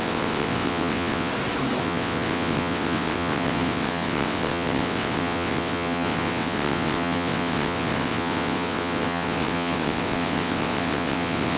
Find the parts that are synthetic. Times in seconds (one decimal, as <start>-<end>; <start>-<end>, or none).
0.0-1.3; 1.8-11.6